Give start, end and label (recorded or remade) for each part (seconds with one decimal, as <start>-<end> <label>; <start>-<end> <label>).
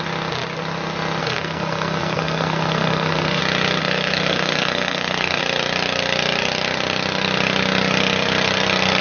0.0-1.2 recorded; 1.2-3.4 remade; 3.4-3.8 recorded; 3.8-5.4 remade; 5.4-9.0 recorded